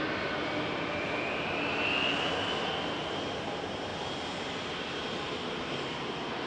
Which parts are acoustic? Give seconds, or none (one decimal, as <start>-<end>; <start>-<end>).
0.0-6.5

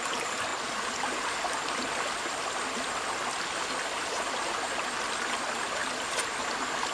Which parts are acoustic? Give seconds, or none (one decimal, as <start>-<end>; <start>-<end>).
0.0-6.9

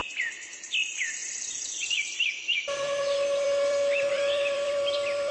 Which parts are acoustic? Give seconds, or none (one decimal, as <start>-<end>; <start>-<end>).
none

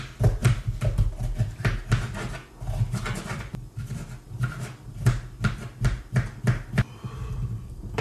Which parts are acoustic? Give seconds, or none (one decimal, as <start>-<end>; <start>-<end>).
0.0-8.0

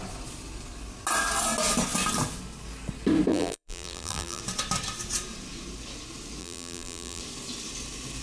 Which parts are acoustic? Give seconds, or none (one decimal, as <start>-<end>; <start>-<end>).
0.0-3.3; 4.4-6.4; 7.2-8.2

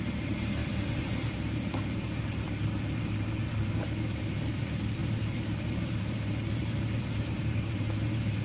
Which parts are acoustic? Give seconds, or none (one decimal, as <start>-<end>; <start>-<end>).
none

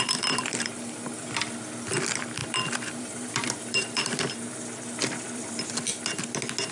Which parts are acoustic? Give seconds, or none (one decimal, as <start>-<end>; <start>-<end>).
5.9-6.7

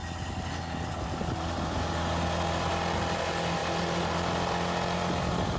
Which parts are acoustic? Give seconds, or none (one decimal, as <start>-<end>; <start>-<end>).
0.0-5.6